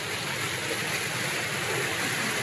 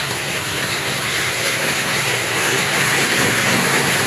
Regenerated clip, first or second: second